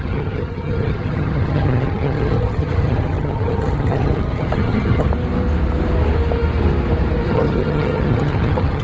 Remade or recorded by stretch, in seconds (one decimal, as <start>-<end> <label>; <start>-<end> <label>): 0.0-5.1 remade; 5.1-7.3 recorded; 7.3-8.8 remade